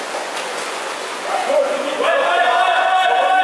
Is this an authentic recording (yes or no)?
no